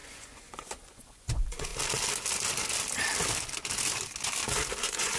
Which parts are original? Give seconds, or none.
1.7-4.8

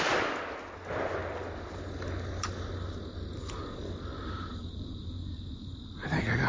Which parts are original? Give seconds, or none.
0.0-4.5; 5.1-6.5

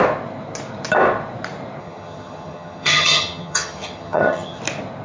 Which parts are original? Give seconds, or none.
0.0-1.8; 4.6-5.0

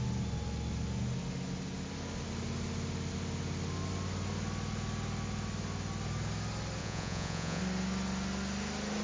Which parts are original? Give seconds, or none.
0.0-6.8; 7.6-9.0

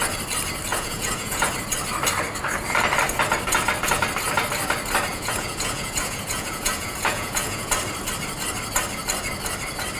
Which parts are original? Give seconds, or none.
0.0-0.7; 1.5-5.1; 7.7-10.0